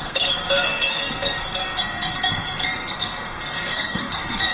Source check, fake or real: fake